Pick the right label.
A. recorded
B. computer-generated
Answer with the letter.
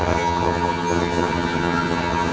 B